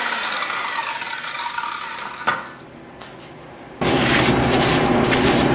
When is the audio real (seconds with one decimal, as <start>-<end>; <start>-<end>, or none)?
0.0-5.5